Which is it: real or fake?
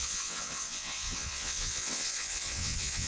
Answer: fake